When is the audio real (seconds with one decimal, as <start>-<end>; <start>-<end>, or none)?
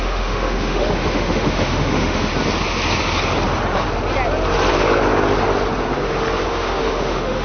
2.3-6.5